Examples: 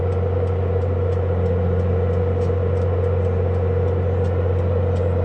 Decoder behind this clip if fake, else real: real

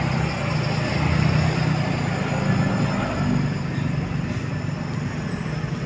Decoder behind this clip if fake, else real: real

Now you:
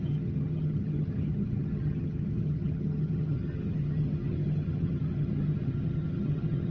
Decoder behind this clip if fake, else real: fake, vocoder, HiFi-GAN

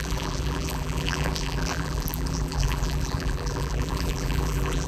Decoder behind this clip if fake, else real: fake, vocoder, BigVGAN v2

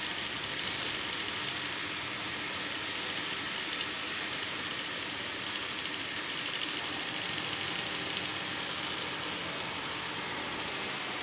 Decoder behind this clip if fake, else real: real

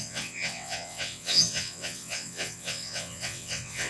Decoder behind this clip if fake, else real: fake, vocoder, WaveNeXt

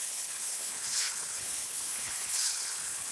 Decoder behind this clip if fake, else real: fake, codec, HILCodec